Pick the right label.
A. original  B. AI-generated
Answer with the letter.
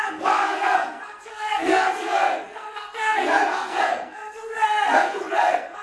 B